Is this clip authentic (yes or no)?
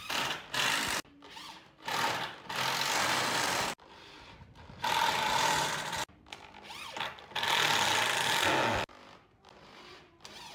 yes